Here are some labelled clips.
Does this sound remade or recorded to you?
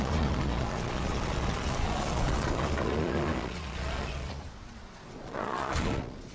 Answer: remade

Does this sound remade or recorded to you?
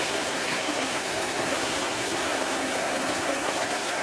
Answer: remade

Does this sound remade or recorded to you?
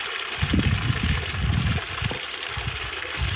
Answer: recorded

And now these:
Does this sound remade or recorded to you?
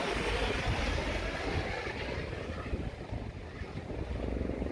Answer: recorded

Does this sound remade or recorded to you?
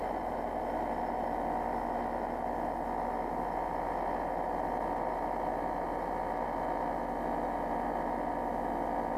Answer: recorded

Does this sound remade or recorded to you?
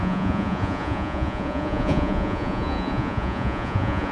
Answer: remade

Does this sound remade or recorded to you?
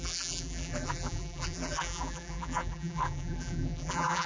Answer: remade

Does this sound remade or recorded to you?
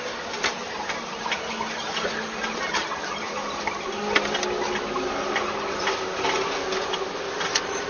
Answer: recorded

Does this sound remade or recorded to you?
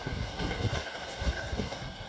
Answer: remade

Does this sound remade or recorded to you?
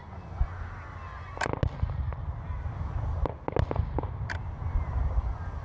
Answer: recorded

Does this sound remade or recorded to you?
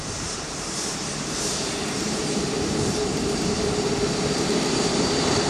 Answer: remade